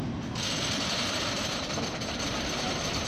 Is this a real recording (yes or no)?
no